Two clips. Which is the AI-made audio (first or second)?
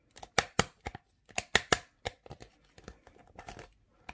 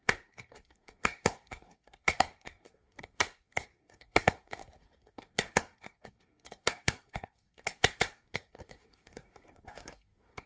second